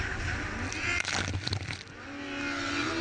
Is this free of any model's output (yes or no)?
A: yes